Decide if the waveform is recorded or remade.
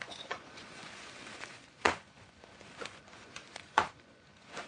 remade